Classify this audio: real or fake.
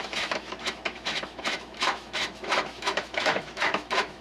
fake